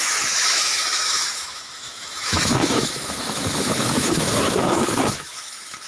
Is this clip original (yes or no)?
no